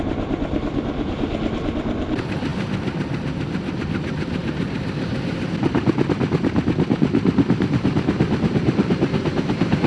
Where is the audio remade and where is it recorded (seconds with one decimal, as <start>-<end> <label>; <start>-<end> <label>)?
0.0-9.9 recorded